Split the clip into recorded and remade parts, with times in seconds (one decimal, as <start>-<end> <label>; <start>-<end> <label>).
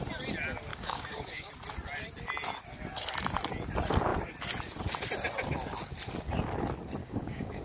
0.0-0.7 recorded; 0.7-1.5 remade; 1.5-7.0 recorded; 7.0-7.6 remade